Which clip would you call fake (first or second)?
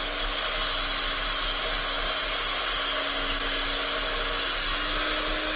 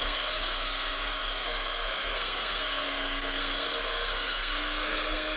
second